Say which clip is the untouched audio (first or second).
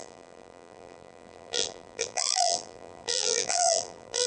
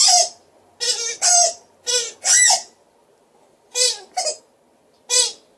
second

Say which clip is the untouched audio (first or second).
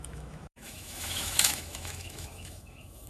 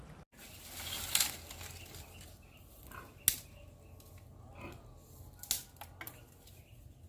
second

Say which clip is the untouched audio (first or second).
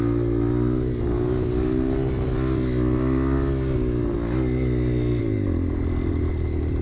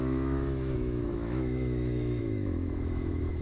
first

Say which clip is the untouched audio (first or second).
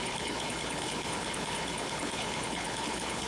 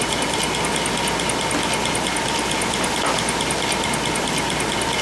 second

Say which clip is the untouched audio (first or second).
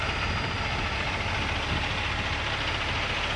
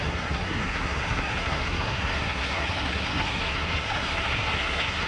first